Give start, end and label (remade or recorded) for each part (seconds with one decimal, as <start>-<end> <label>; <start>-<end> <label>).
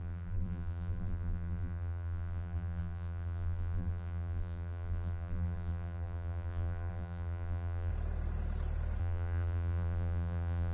0.0-7.9 remade; 7.9-9.0 recorded; 9.0-10.7 remade